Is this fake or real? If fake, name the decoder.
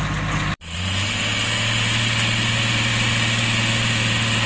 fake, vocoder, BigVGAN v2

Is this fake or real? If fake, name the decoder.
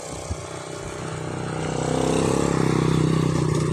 real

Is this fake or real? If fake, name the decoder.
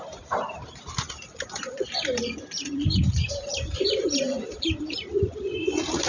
fake, vocoder, BigVGAN v2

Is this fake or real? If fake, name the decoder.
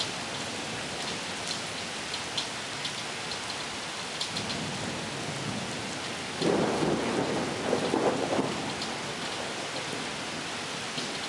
real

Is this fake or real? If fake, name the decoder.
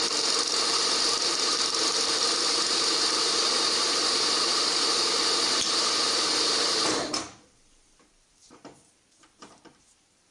fake, vocoder, BigVGAN v2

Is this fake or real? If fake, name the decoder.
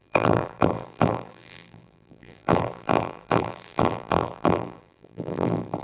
fake, vocoder, BigVGAN v2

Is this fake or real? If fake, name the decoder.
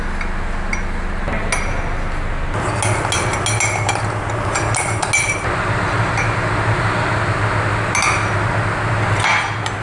real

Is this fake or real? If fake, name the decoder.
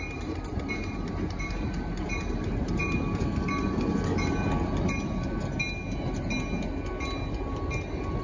real